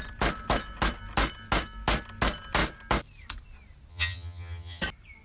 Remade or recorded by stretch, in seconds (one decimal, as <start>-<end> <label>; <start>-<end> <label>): 0.0-3.9 recorded; 3.9-4.8 remade; 4.8-5.2 recorded